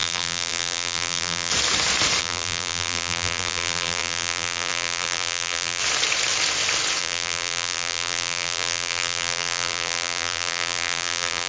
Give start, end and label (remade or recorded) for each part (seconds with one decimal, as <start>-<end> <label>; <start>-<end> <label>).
0.0-1.5 remade; 1.5-2.2 recorded; 2.2-5.8 remade; 5.8-7.0 recorded; 7.0-11.5 remade